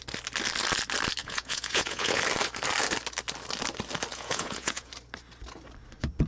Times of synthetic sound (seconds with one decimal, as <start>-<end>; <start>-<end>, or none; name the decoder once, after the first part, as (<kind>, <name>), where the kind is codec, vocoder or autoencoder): 1.2-2.2 (vocoder, Vocos); 4.1-4.9

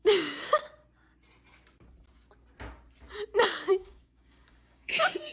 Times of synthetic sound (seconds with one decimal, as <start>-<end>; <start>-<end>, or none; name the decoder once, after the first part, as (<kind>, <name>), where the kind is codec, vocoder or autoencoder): 0.0-0.5 (codec, DAC); 3.7-5.3

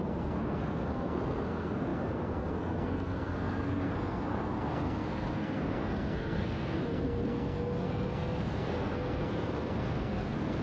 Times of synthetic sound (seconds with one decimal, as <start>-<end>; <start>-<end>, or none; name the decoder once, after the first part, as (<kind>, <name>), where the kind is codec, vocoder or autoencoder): 0.0-10.6 (codec, SNAC)

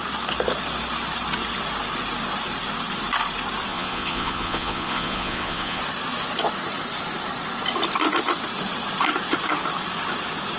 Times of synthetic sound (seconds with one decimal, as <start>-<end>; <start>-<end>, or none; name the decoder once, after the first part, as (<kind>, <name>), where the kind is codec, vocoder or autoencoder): 3.7-5.8 (vocoder, Vocos)

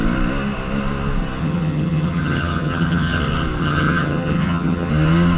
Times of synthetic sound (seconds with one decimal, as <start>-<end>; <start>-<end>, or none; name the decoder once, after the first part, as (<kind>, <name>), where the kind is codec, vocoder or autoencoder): 1.4-3.2 (vocoder, HiFi-GAN); 3.6-4.9

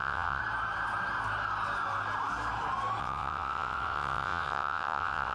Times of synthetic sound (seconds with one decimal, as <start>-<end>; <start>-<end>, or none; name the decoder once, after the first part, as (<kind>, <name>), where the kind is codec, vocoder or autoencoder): 0.0-0.4 (vocoder, WaveNeXt); 3.0-5.3

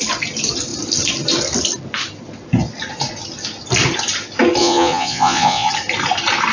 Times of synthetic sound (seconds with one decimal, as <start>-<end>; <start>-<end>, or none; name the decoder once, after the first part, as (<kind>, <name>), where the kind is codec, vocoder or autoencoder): 4.6-5.7 (vocoder, Vocos)